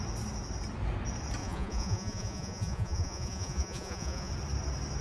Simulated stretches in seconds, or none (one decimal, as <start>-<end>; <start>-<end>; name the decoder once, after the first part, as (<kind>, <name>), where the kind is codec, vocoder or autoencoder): 1.4-4.3 (vocoder, Vocos)